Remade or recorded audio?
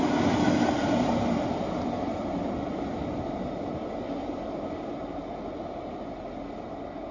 recorded